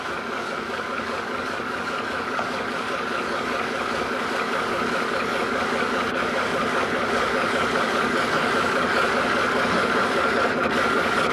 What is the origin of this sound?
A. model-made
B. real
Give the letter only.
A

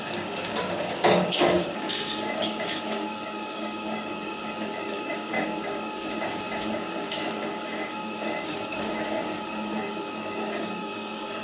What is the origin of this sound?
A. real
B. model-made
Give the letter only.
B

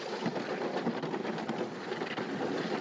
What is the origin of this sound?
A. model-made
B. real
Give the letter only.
B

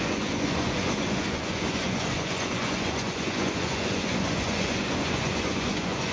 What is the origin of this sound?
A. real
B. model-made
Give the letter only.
B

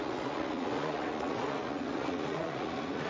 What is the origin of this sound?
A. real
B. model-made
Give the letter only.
B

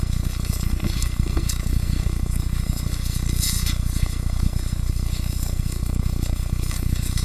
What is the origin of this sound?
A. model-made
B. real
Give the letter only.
A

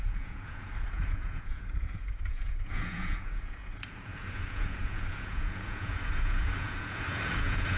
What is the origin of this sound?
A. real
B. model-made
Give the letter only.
B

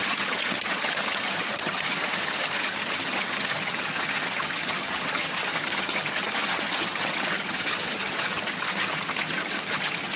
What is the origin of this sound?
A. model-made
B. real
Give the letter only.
A